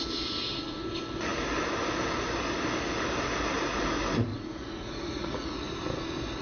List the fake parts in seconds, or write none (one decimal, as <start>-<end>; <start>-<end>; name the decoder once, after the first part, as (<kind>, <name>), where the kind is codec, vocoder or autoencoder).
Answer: 4.3-5.7 (vocoder, Vocos)